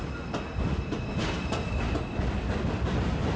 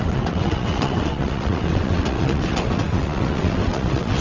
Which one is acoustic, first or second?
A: first